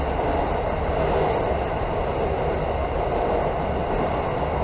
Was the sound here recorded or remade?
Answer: recorded